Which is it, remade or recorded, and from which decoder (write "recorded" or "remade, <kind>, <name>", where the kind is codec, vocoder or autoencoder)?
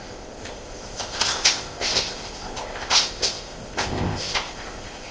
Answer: remade, codec, ZipCodec